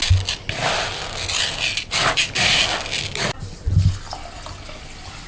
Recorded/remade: recorded